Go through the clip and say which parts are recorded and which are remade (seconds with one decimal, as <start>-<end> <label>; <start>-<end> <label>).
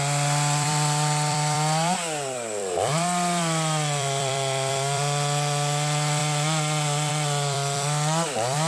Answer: 0.0-6.2 remade; 6.2-7.1 recorded; 7.1-8.7 remade